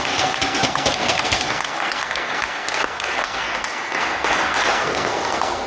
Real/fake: fake